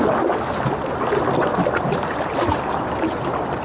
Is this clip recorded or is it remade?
recorded